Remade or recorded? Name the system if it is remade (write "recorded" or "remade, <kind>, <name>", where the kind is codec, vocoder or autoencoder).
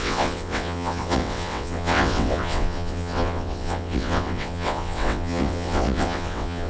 remade, vocoder, WaveNeXt